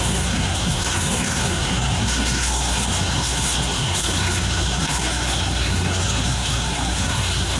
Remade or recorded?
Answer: remade